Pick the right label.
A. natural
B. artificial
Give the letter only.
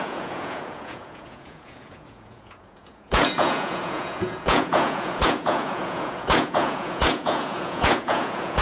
B